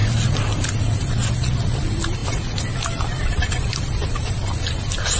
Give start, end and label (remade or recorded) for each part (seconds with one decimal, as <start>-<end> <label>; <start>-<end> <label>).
0.0-1.1 remade; 1.1-5.2 recorded